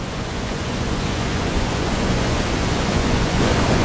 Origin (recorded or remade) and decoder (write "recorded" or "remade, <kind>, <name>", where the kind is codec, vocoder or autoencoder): remade, vocoder, Vocos